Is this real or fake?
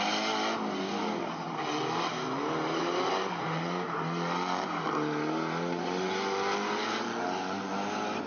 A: real